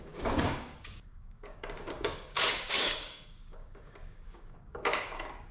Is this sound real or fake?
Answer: fake